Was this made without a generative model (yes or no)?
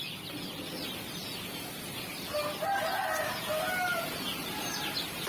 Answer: yes